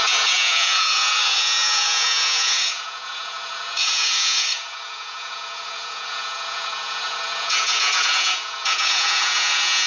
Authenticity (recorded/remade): remade